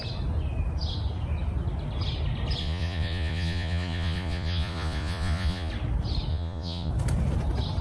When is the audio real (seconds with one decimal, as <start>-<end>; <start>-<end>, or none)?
0.0-2.6; 5.7-6.3; 6.9-7.8